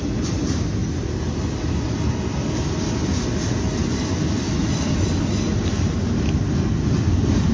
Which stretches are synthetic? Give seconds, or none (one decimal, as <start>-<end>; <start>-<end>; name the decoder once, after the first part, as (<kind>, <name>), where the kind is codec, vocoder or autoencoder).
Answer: none